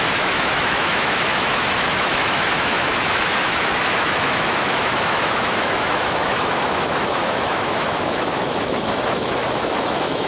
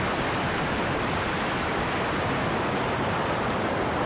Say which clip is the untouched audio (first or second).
second